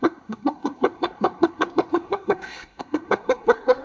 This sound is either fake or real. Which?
fake